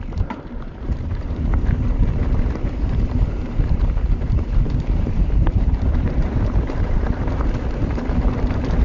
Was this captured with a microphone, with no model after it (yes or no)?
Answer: no